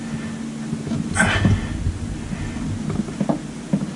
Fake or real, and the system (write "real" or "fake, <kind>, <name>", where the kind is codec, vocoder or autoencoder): real